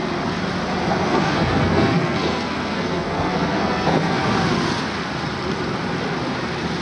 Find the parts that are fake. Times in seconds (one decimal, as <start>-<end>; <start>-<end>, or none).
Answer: 0.9-4.2